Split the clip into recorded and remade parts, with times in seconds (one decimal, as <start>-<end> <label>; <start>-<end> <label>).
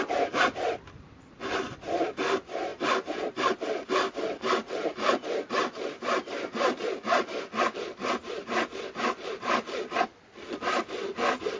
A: 0.0-2.7 remade; 2.7-7.4 recorded; 7.4-11.6 remade